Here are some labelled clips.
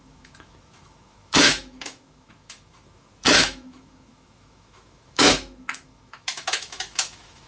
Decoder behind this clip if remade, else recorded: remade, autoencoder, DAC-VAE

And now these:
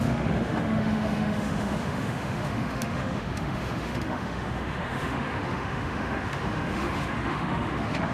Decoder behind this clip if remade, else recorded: remade, autoencoder, DAC-VAE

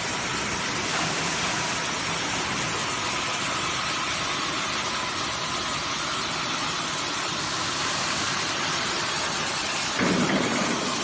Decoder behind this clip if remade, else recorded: recorded